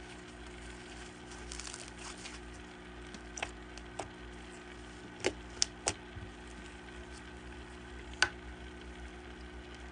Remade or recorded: recorded